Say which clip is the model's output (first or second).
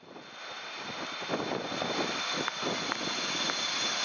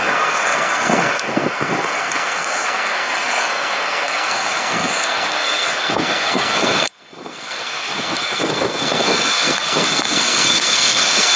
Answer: second